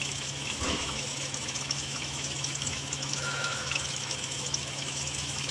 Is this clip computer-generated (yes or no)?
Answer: yes